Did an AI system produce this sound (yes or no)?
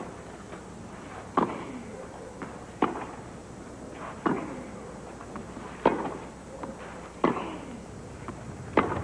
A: no